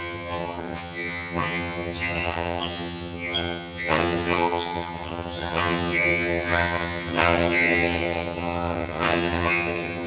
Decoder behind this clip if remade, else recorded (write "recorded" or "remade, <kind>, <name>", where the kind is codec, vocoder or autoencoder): remade, vocoder, HiFi-GAN